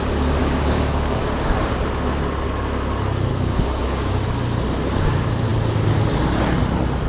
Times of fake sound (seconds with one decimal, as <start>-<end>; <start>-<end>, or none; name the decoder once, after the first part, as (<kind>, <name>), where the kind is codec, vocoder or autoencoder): 0.4-1.2 (codec, DAC); 3.3-4.2